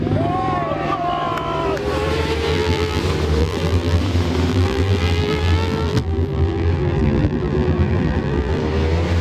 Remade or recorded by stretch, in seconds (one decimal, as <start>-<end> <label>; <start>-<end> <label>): 0.0-2.5 recorded; 2.5-3.0 remade; 3.0-3.4 recorded; 3.4-4.0 remade; 4.0-4.5 recorded; 4.5-8.6 remade; 8.6-9.2 recorded